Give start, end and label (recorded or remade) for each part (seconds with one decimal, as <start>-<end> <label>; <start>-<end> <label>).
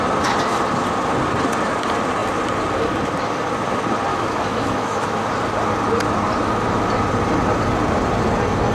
0.0-4.1 recorded; 4.1-5.3 remade; 5.3-8.7 recorded